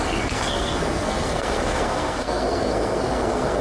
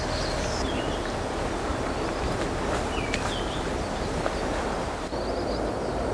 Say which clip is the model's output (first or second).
first